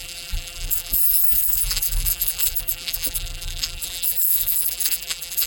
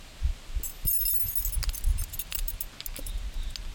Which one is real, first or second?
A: second